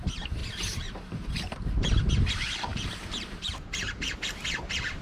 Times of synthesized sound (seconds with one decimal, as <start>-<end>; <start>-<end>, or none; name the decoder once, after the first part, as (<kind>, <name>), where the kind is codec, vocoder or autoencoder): 0.4-2.1 (vocoder, BigVGAN v2); 2.7-3.7